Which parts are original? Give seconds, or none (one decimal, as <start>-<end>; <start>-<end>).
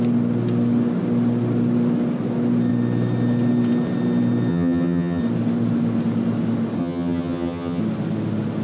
0.0-4.5; 5.2-6.8; 7.8-8.6